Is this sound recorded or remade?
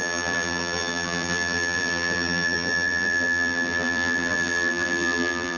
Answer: remade